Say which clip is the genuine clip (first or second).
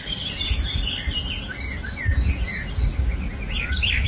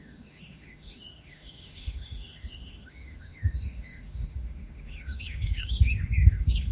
first